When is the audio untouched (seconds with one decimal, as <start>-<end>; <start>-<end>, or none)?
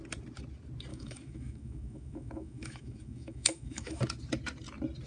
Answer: 0.0-0.9; 4.0-5.1